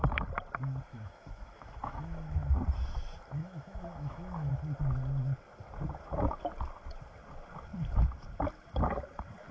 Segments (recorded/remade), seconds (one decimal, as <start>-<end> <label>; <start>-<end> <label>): 0.0-0.9 recorded; 0.9-2.6 remade; 2.6-3.4 recorded; 3.4-4.5 remade; 4.5-9.5 recorded